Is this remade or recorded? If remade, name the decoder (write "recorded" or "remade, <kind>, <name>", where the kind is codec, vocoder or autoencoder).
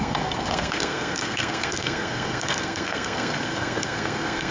remade, codec, SNAC